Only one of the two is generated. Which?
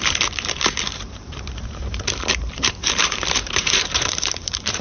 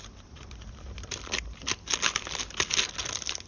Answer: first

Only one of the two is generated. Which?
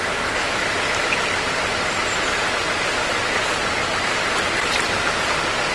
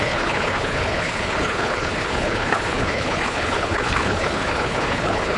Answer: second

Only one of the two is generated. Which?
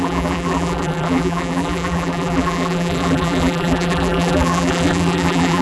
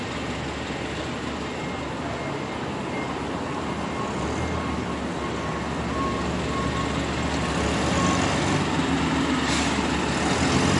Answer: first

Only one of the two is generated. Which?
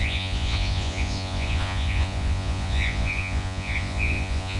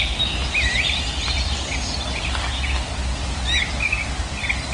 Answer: first